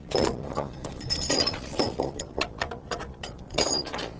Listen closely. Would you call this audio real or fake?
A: fake